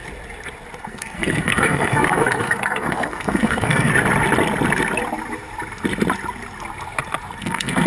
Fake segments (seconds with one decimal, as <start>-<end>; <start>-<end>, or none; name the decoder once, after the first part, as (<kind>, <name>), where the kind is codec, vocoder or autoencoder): 0.8-3.9 (codec, SNAC); 7.4-7.9